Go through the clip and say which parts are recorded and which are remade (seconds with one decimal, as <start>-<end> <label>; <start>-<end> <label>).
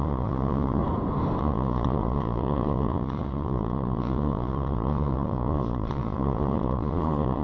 0.0-0.8 remade; 0.8-1.4 recorded; 1.4-7.4 remade